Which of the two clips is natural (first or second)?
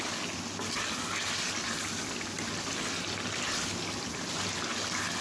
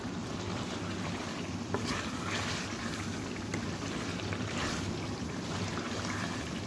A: first